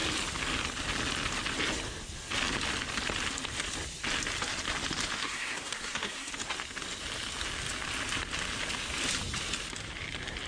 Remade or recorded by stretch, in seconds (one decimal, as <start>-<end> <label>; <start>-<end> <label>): 0.0-5.2 recorded; 5.2-6.3 remade; 6.3-10.5 recorded